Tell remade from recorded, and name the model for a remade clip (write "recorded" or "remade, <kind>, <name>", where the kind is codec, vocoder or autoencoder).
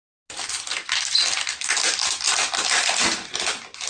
recorded